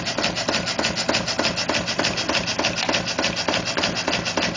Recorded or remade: recorded